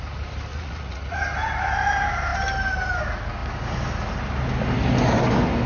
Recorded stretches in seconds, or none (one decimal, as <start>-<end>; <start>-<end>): 0.0-0.5; 1.2-5.7